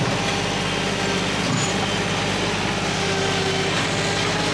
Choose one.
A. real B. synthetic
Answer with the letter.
A